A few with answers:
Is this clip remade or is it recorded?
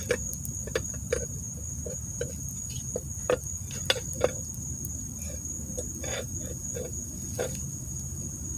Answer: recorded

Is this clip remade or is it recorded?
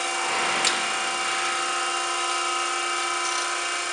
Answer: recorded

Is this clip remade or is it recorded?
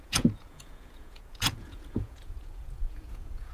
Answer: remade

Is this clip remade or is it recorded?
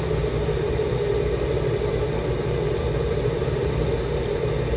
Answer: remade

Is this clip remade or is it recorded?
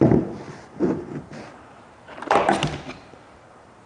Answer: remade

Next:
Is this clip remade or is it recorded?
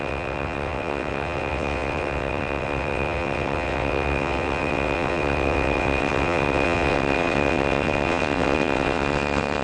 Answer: remade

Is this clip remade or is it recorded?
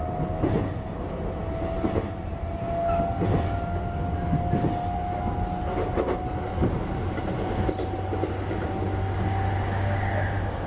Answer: recorded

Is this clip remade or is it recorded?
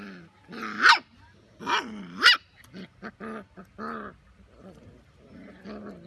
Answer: recorded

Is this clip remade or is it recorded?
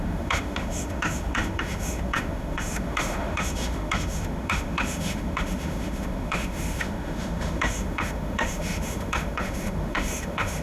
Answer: remade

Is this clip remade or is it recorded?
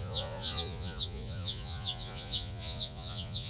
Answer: remade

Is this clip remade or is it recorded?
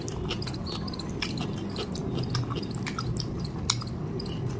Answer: recorded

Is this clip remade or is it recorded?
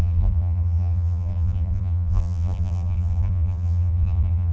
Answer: remade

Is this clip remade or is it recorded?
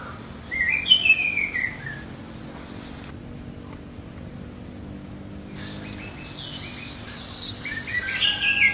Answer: recorded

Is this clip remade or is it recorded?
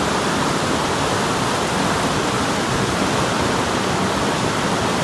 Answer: recorded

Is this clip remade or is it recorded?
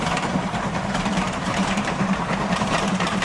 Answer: remade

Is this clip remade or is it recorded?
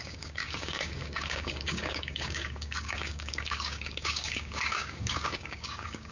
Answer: remade